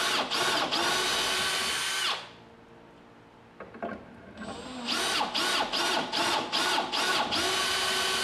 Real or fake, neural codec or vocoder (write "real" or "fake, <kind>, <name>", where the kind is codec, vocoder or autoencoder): real